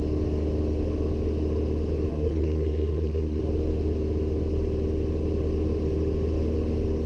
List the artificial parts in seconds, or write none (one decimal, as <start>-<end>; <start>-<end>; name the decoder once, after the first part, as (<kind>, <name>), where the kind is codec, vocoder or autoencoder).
2.1-3.4 (codec, SNAC)